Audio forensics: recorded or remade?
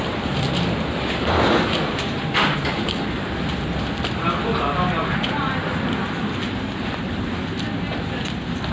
recorded